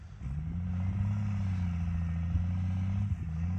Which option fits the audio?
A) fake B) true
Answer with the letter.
B